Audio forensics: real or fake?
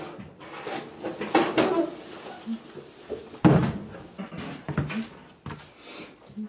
real